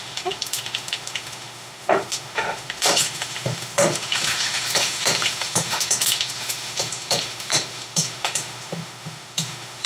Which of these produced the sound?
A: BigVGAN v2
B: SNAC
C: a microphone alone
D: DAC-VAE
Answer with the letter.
D